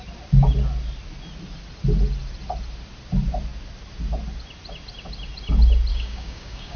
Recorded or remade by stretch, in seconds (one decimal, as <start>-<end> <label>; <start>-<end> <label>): 0.0-5.9 recorded; 5.9-6.8 remade